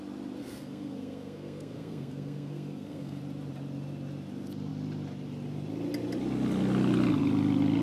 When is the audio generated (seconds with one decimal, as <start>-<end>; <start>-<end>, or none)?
0.4-3.2